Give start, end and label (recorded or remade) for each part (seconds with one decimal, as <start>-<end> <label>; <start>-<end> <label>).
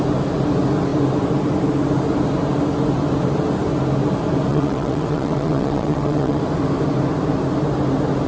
0.0-4.5 recorded; 4.5-6.4 remade; 6.4-8.3 recorded